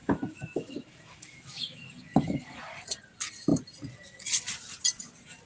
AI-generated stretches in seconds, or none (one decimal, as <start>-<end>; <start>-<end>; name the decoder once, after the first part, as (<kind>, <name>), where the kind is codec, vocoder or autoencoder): 0.0-2.6 (autoencoder, DAC-VAE)

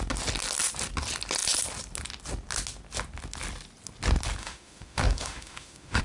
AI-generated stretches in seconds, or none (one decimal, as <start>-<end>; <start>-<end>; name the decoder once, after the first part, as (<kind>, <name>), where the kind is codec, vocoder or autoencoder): 4.4-6.0 (autoencoder, DAC-VAE)

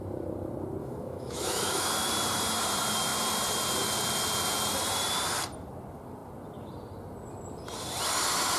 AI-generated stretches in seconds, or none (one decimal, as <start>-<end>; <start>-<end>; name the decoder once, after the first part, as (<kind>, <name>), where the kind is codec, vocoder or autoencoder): 0.8-2.1 (autoencoder, DAC-VAE)

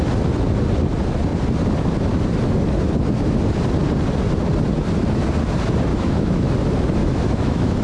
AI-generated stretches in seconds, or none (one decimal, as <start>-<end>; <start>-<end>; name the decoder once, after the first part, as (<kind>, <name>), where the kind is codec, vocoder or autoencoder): 5.9-6.5 (autoencoder, DAC-VAE); 7.0-7.8

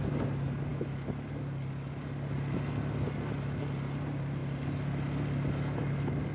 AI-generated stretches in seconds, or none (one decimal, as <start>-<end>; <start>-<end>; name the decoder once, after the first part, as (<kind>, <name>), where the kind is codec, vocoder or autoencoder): 0.7-1.3 (autoencoder, DAC-VAE)